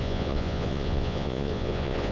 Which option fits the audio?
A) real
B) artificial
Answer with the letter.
B